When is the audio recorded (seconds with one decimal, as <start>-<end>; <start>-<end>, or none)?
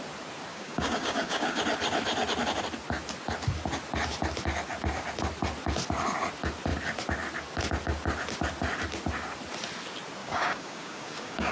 0.0-0.5; 1.6-10.2